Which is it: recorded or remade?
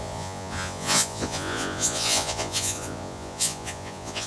remade